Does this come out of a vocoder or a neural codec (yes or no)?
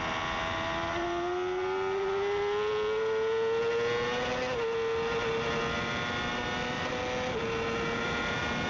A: no